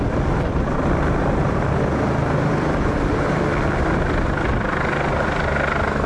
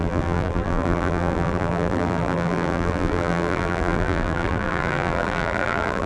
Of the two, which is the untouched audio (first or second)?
first